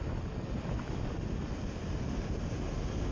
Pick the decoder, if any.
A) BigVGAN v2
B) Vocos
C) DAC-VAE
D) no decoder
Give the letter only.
D